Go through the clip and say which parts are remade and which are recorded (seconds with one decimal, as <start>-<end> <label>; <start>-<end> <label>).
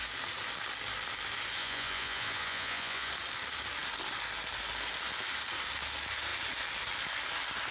0.0-1.6 recorded; 1.6-3.1 remade; 3.1-7.7 recorded